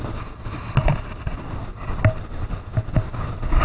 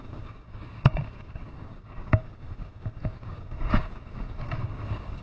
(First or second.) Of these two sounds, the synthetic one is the second